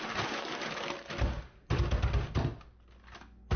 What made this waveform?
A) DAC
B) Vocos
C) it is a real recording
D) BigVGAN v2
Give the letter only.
C